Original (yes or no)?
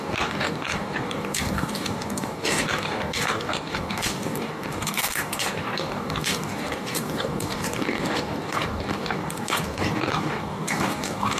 no